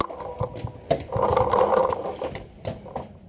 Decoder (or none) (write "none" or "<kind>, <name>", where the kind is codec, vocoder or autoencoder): none